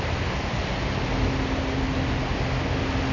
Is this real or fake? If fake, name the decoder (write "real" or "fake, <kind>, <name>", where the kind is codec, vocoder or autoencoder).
real